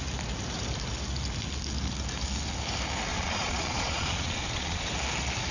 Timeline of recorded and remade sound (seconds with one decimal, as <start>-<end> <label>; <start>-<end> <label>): 0.0-3.1 recorded; 3.1-4.9 remade; 4.9-5.5 recorded